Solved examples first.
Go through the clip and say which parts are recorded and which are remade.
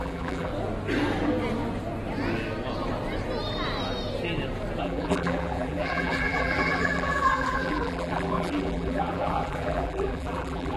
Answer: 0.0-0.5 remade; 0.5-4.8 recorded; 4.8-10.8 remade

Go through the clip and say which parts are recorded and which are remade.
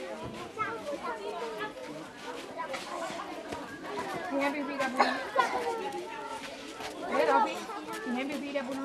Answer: 0.0-1.8 recorded; 1.8-3.2 remade; 3.2-6.3 recorded; 6.3-7.2 remade; 7.2-8.8 recorded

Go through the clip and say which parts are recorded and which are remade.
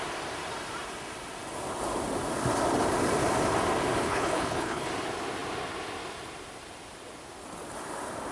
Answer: 0.0-4.0 recorded; 4.0-4.9 remade; 4.9-8.3 recorded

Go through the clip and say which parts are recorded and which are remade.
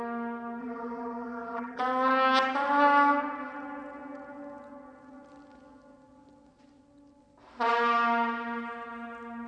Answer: 0.0-0.6 recorded; 0.6-1.8 remade; 1.8-9.5 recorded